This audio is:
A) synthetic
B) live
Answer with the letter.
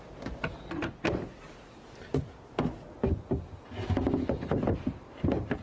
B